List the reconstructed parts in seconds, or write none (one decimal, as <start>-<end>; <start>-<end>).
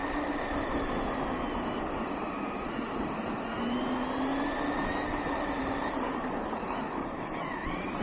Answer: 0.0-1.1; 4.3-8.0